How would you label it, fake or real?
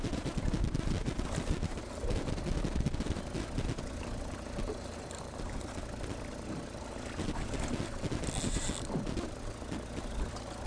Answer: real